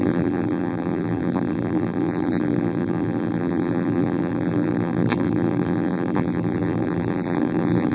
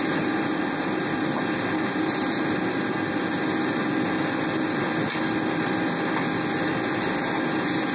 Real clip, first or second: second